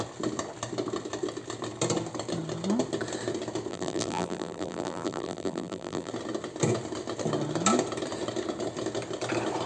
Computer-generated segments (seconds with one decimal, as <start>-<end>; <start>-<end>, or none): 3.7-6.1